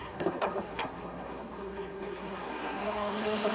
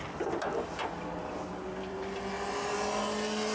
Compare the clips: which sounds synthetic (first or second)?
first